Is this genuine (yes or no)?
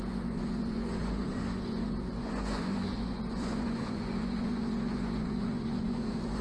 no